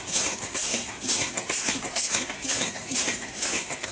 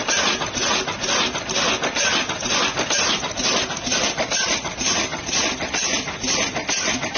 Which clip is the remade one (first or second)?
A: first